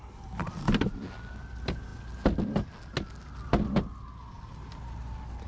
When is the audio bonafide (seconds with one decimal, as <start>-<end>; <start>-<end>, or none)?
0.0-5.5